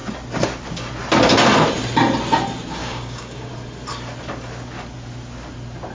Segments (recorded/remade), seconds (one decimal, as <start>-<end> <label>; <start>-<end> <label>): 0.0-2.8 recorded; 2.8-3.5 remade; 3.5-5.9 recorded